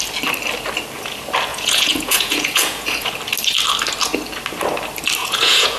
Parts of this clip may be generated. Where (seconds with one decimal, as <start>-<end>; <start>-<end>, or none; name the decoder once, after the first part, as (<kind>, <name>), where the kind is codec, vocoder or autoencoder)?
1.5-3.1 (vocoder, Vocos); 5.2-5.8